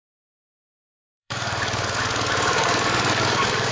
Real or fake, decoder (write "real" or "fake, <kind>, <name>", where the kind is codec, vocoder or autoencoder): fake, codec, DAC